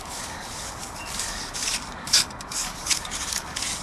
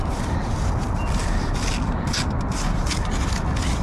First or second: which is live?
second